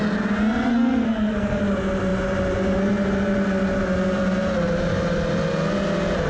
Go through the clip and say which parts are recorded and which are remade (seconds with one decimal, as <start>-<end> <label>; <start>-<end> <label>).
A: 0.0-0.7 recorded; 0.7-1.6 remade; 1.6-6.3 recorded

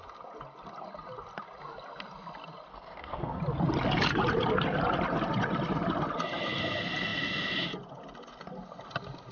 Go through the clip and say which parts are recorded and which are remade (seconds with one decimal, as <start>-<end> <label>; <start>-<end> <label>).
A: 0.0-2.7 recorded; 2.7-3.4 remade; 3.4-9.3 recorded

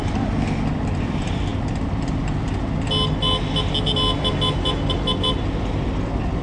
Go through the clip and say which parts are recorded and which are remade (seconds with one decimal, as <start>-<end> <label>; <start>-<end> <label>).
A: 0.0-6.4 recorded

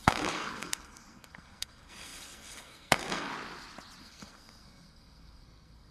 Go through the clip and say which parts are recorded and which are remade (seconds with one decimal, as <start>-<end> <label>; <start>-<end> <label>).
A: 0.0-3.3 remade; 3.3-4.0 recorded; 4.0-5.9 remade